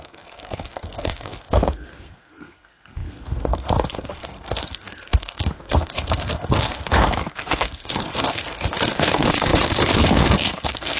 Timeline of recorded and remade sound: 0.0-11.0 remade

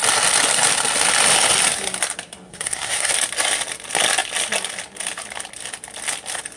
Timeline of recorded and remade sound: 0.0-2.5 recorded; 2.5-3.1 remade; 3.1-6.6 recorded